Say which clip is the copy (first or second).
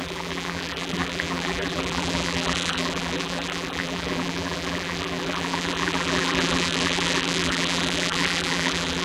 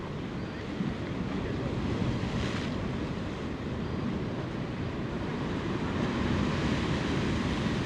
first